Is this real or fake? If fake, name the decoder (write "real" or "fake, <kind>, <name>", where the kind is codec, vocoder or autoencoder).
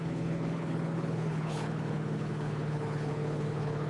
fake, codec, HILCodec